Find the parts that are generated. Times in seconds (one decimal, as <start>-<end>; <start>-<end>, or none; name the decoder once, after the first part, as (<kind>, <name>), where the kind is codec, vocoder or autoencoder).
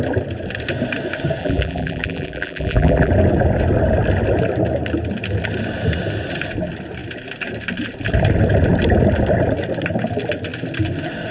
1.4-3.1 (vocoder, BigVGAN v2)